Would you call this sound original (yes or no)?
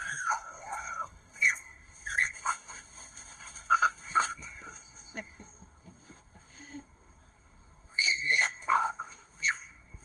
no